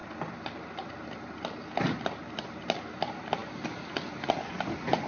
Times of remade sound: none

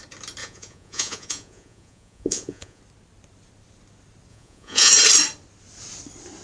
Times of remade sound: 0.4-2.8; 4.3-4.9

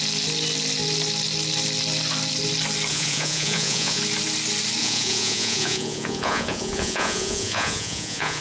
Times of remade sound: 2.9-4.0; 4.8-8.4

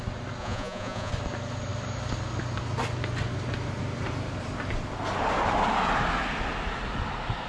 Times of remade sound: 0.4-1.1